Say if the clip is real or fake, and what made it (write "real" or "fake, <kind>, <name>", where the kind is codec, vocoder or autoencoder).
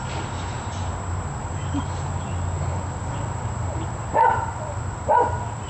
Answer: fake, vocoder, BigVGAN v2